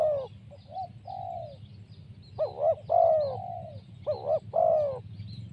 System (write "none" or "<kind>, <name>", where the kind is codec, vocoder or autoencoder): none